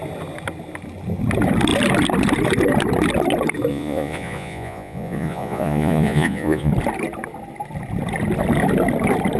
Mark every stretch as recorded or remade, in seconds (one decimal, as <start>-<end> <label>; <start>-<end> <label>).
0.0-3.7 recorded; 3.7-6.7 remade; 6.7-9.4 recorded

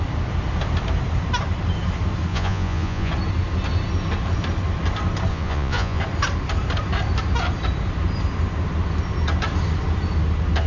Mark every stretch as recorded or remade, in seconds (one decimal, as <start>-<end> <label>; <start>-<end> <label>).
0.0-2.3 recorded; 2.3-3.1 remade; 3.1-5.3 recorded; 5.3-6.0 remade; 6.0-10.7 recorded

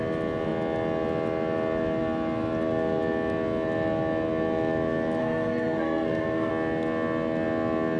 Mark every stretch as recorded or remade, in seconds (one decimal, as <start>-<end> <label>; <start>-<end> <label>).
0.0-5.2 recorded; 5.2-6.5 remade; 6.5-8.0 recorded

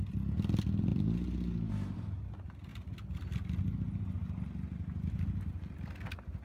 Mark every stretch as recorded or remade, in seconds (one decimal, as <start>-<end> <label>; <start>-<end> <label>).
0.0-6.4 recorded

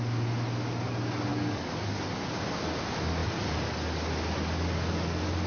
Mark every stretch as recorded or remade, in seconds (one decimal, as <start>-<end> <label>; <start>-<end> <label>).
0.0-1.3 recorded; 1.3-1.8 remade; 1.8-5.5 recorded

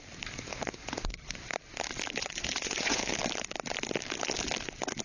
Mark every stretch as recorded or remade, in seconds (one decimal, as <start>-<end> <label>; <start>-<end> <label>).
0.0-0.5 recorded; 0.5-1.5 remade; 1.5-2.2 recorded; 2.2-3.1 remade; 3.1-5.0 recorded